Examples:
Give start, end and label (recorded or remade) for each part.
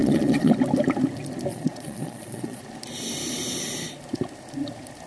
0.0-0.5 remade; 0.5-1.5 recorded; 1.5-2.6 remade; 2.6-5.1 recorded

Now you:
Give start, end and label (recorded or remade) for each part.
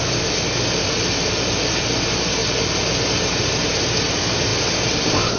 0.0-5.4 recorded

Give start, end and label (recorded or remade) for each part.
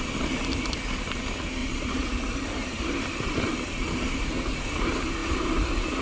0.0-1.6 recorded; 1.6-4.6 remade; 4.6-6.0 recorded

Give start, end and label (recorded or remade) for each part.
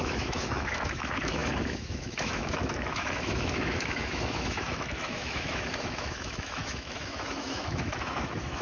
0.0-8.6 remade